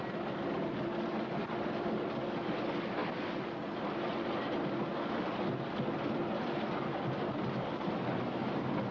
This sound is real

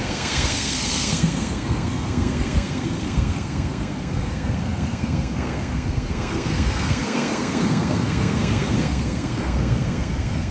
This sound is fake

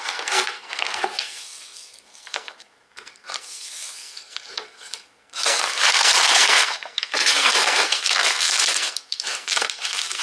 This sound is fake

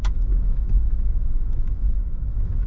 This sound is fake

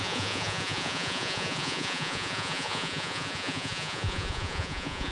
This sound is fake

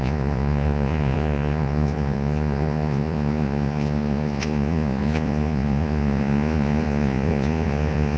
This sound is fake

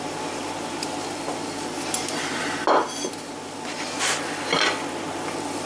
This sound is real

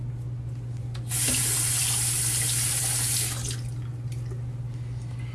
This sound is real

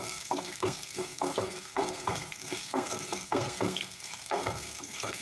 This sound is fake